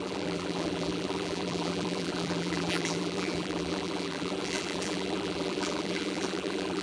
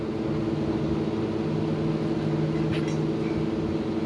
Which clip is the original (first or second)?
second